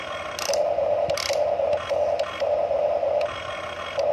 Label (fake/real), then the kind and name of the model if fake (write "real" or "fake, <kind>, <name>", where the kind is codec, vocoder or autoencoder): real